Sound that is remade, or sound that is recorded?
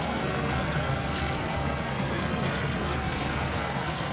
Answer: remade